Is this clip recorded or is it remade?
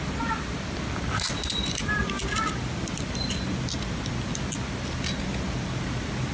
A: recorded